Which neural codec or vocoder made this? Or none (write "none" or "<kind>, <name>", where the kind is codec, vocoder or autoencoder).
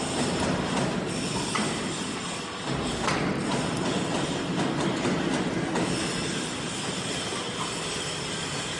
none